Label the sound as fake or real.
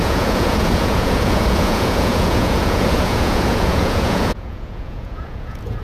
fake